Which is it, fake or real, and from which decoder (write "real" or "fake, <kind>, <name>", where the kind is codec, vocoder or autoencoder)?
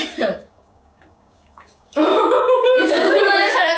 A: fake, codec, DAC